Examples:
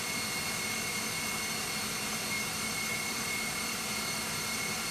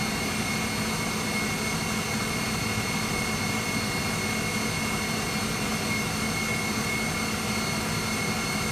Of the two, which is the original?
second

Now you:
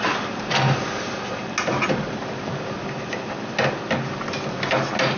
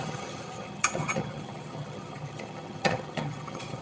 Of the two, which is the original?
first